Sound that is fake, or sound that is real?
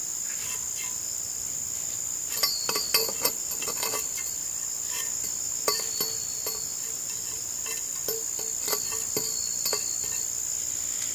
real